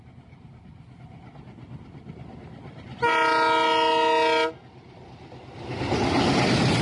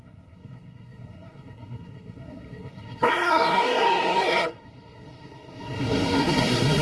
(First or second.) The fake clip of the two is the second